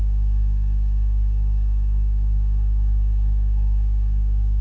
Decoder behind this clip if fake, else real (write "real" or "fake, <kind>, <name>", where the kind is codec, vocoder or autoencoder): fake, codec, SNAC